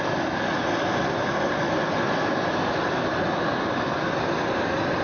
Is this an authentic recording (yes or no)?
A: yes